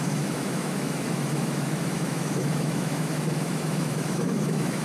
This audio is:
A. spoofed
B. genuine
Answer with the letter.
A